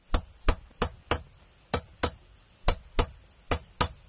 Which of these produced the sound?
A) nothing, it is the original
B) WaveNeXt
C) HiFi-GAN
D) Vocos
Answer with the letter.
A